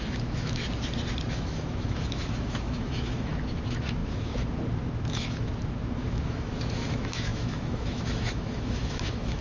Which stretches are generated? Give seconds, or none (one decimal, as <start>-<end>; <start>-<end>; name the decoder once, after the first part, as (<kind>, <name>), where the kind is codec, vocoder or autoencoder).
0.0-0.6 (autoencoder, DAC-VAE); 1.3-9.4